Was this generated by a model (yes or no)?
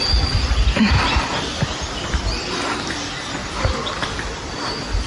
yes